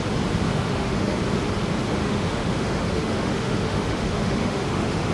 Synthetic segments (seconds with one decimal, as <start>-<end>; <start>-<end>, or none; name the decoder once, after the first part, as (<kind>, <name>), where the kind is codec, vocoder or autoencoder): 0.5-1.2 (autoencoder, DAC-VAE); 2.0-5.1